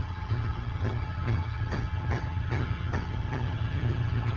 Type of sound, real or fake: fake